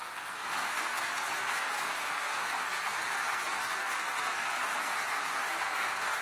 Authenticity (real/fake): fake